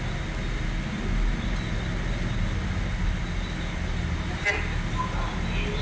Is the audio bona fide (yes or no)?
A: yes